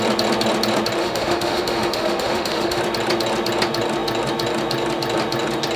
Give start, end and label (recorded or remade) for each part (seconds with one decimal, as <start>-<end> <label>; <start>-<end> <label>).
0.0-1.0 recorded; 1.0-2.8 remade; 2.8-5.8 recorded